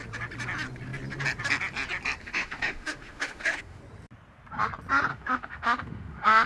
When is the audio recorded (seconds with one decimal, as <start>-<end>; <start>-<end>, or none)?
0.0-2.2; 3.8-5.1